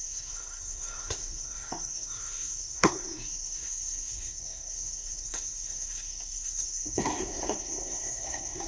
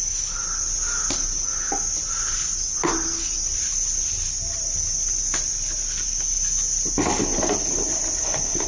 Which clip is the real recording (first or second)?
second